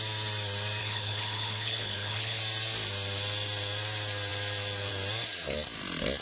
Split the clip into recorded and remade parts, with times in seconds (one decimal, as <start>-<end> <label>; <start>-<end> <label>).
0.0-0.8 recorded; 0.8-2.4 remade; 2.4-6.2 recorded